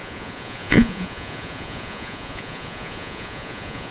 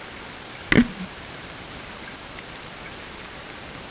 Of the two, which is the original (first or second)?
second